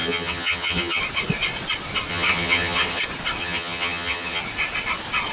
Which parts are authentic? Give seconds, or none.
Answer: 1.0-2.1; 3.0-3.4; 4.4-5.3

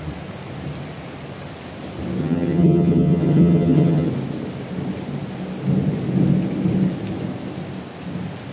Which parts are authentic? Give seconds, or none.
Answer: 0.0-2.2; 4.1-8.5